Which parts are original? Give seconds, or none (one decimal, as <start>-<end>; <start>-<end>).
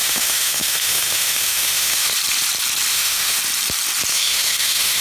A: 2.1-2.9; 3.4-4.1